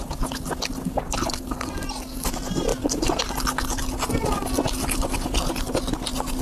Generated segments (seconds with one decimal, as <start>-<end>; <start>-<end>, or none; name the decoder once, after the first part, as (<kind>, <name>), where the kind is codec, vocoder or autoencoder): none